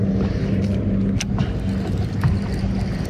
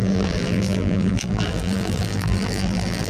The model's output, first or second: second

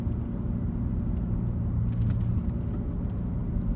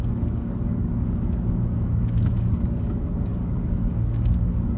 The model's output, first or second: second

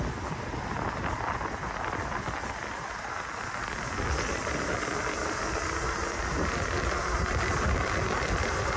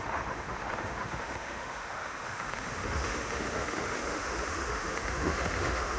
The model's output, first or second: second